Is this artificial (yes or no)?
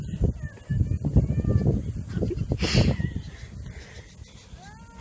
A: no